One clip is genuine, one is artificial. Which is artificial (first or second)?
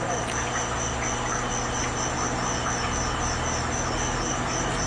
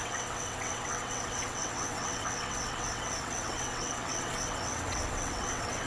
second